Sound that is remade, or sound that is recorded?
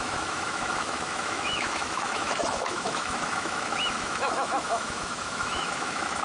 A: remade